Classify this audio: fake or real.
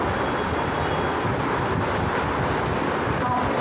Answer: real